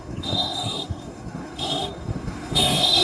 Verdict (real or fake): fake